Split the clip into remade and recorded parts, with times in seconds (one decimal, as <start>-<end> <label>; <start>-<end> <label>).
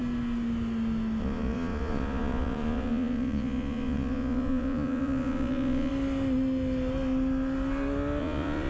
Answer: 0.0-1.2 recorded; 1.2-5.9 remade; 5.9-8.2 recorded; 8.2-8.7 remade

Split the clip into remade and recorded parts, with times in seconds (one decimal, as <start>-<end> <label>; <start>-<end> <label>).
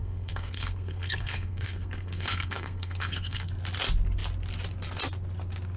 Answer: 0.0-3.5 remade; 3.5-5.8 recorded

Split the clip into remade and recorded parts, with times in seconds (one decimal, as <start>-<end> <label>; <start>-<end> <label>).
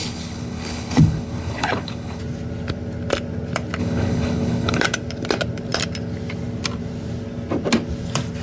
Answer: 0.0-2.2 remade; 2.2-3.8 recorded; 3.8-4.8 remade; 4.8-8.4 recorded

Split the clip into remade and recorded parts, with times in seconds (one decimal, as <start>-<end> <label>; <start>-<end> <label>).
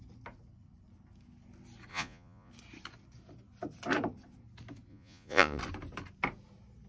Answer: 0.0-1.9 recorded; 1.9-2.5 remade; 2.5-4.9 recorded; 4.9-5.6 remade; 5.6-6.9 recorded